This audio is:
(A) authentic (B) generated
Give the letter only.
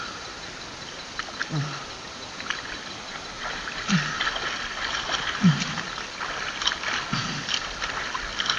A